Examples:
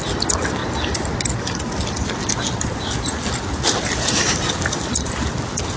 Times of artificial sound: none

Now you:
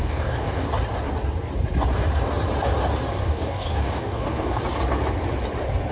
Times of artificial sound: 0.0-0.7; 3.2-4.6